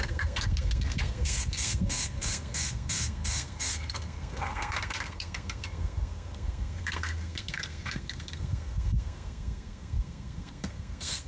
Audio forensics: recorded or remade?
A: remade